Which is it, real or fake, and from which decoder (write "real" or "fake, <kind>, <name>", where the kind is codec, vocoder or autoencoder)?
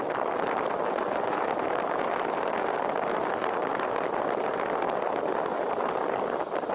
real